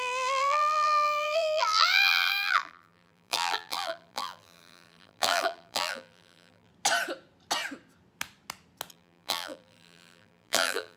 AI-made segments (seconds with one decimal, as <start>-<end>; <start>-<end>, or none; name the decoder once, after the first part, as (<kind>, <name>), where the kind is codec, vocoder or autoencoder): 0.0-6.7 (vocoder, BigVGAN v2); 8.9-11.0